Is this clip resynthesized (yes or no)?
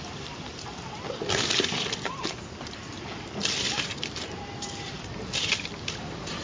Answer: yes